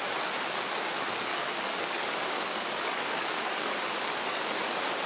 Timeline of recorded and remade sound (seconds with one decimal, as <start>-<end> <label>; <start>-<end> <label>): 0.0-1.3 recorded; 1.3-4.4 remade; 4.4-5.1 recorded